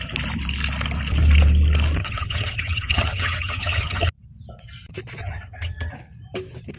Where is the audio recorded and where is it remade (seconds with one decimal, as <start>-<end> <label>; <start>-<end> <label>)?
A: 0.0-2.0 recorded; 2.0-4.1 remade; 4.1-5.2 recorded; 5.2-5.9 remade; 5.9-6.8 recorded